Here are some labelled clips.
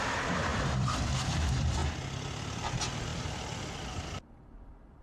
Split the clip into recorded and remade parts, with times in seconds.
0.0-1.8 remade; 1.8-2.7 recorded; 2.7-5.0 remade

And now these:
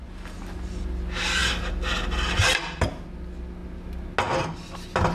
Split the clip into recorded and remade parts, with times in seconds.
0.0-5.1 recorded

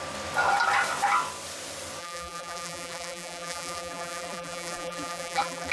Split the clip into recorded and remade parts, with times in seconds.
0.0-2.0 recorded; 2.0-5.7 remade

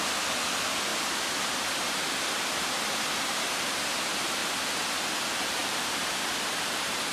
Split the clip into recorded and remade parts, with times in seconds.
0.0-0.9 recorded; 0.9-3.5 remade; 3.5-4.4 recorded; 4.4-5.1 remade; 5.1-5.6 recorded; 5.6-7.1 remade

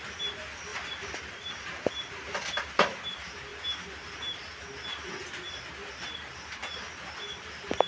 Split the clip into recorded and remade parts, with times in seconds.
0.0-0.7 recorded; 0.7-1.9 remade; 1.9-7.9 recorded